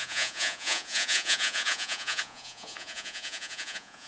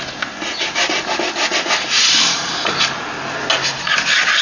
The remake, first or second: first